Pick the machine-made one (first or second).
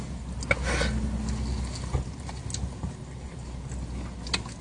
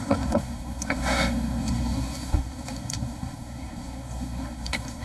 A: second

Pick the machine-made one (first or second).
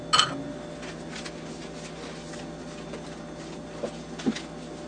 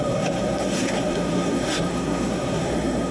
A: second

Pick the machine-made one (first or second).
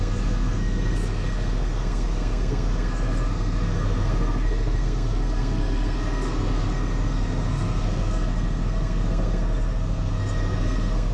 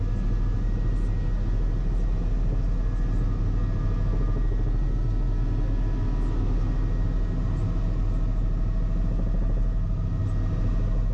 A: first